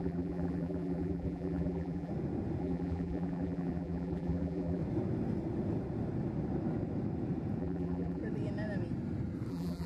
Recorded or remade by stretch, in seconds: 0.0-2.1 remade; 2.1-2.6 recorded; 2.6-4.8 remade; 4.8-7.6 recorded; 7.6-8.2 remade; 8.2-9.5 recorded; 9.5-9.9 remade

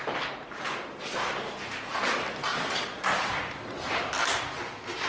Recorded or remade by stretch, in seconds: 0.0-2.5 recorded; 2.5-3.9 remade; 3.9-5.1 recorded

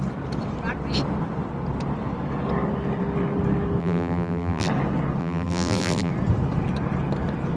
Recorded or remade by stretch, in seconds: 0.0-3.8 recorded; 3.8-4.7 remade; 4.7-5.2 recorded; 5.2-6.1 remade; 6.1-7.6 recorded

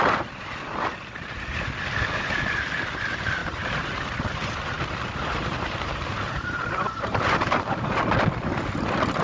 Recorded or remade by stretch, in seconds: 0.0-3.4 recorded; 3.4-8.0 remade; 8.0-9.2 recorded

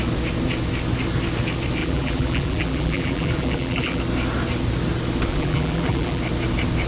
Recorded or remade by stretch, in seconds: 0.0-1.8 recorded; 1.8-4.0 remade; 4.0-5.3 recorded; 5.3-6.2 remade; 6.2-6.9 recorded

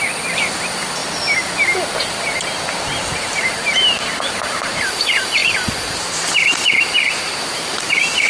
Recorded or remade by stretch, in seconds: 0.0-1.0 remade; 1.0-2.7 recorded; 2.7-8.3 remade